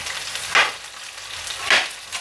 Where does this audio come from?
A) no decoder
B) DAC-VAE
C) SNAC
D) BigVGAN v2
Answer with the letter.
A